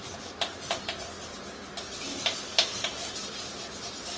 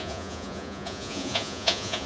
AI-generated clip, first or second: second